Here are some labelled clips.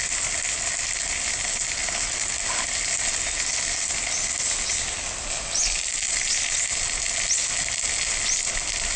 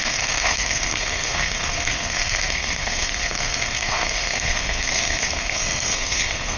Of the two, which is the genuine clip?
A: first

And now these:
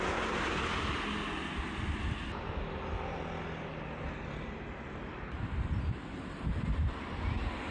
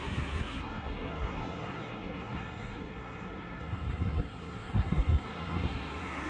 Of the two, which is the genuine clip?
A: first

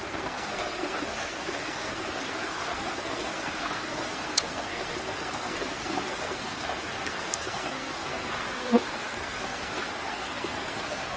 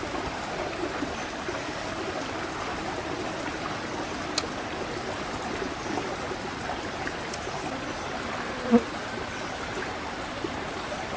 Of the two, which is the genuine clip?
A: second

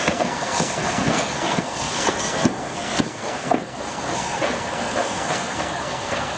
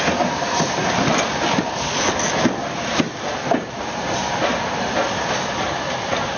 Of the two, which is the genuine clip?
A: second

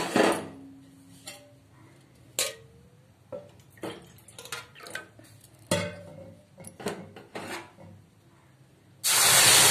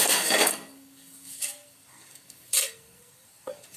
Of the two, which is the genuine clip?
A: first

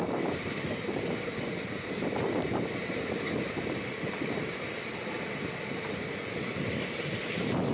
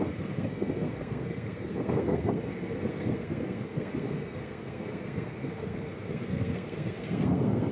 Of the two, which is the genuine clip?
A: first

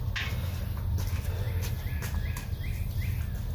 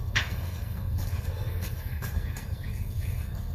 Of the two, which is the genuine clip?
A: first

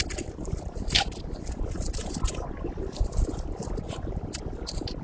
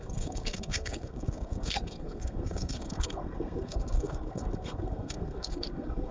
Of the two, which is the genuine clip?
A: first